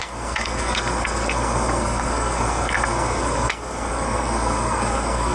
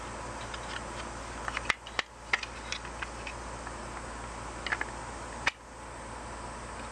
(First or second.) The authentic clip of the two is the second